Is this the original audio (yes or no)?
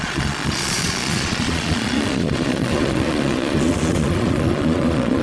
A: no